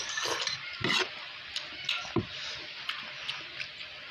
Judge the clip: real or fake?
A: real